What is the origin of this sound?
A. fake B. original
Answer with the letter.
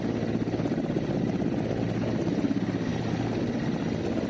B